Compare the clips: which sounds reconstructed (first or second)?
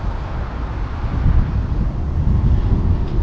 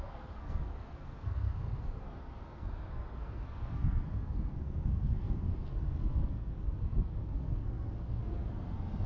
second